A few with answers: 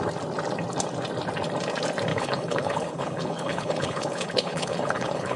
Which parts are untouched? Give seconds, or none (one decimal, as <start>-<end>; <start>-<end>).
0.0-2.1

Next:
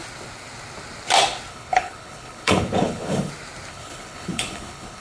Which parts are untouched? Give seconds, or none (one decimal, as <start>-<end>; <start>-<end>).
0.0-1.5; 3.3-3.7

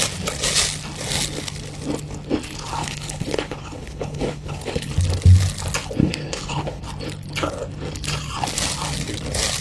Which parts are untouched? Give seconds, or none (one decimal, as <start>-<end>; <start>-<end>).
0.0-2.8; 4.9-6.0; 6.8-9.6

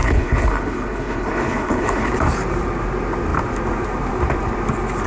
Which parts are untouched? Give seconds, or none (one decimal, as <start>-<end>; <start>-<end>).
2.1-5.1